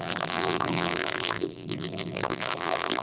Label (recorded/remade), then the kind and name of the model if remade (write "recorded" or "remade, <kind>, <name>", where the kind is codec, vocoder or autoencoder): remade, vocoder, BigVGAN v2